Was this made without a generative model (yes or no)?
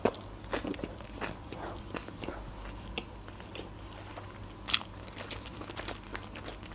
yes